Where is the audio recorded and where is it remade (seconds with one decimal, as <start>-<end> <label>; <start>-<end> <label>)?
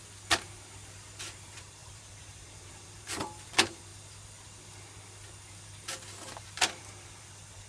0.0-1.2 recorded; 1.2-3.9 remade; 3.9-6.4 recorded; 6.4-7.7 remade